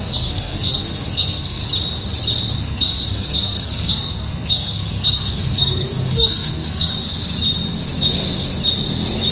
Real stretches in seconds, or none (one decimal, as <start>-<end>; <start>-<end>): 1.6-2.6; 6.9-9.3